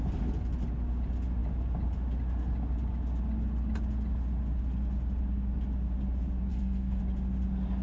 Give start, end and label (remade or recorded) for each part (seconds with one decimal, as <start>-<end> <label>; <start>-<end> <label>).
0.0-6.5 recorded; 6.5-7.0 remade; 7.0-7.8 recorded